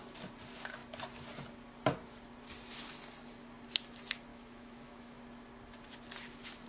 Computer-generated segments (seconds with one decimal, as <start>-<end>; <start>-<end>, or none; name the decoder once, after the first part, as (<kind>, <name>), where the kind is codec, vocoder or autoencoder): 4.3-5.2 (autoencoder, DAC-VAE)

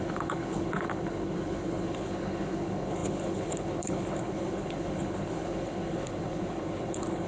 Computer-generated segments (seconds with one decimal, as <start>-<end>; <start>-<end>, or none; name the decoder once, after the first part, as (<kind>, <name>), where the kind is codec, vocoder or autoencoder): 0.0-7.3 (codec, HILCodec)

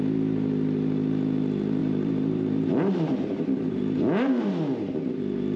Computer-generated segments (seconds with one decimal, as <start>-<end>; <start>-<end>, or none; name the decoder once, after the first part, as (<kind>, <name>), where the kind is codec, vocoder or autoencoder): 1.8-4.4 (vocoder, BigVGAN v2)